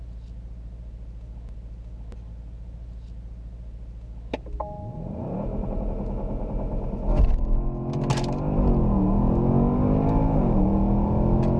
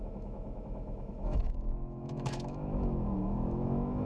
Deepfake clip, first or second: second